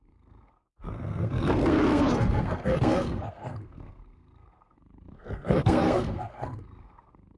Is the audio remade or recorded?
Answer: remade